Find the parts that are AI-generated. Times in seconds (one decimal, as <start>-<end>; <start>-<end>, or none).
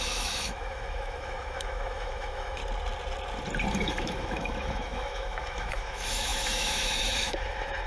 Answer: 0.0-2.6; 3.7-7.9